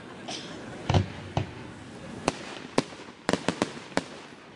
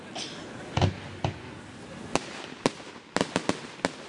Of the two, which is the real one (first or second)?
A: second